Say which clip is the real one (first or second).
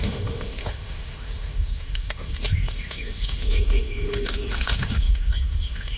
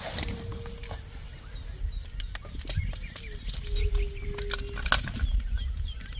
second